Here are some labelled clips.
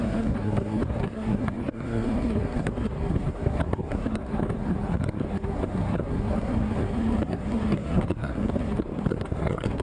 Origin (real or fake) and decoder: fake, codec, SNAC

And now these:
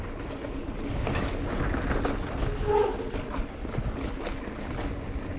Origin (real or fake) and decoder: real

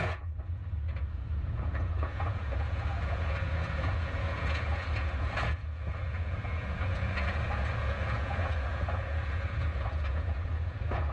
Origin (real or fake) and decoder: fake, vocoder, Vocos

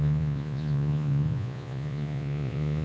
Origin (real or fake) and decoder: fake, vocoder, Vocos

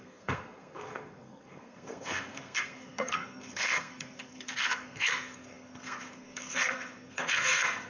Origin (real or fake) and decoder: fake, codec, SNAC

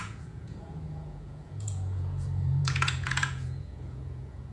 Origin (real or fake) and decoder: fake, vocoder, Vocos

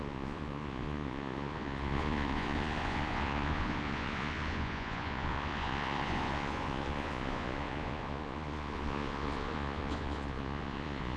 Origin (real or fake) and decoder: fake, vocoder, Vocos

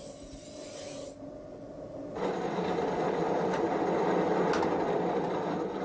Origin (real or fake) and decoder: real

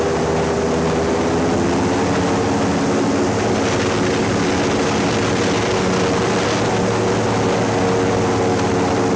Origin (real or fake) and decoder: real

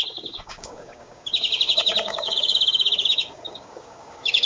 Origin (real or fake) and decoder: fake, codec, DAC